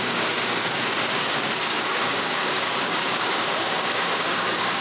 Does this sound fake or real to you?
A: fake